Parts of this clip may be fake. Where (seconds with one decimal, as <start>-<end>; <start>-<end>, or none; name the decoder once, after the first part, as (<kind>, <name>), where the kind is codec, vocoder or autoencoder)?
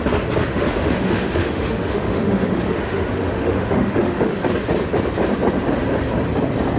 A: 0.5-4.4 (autoencoder, DAC-VAE)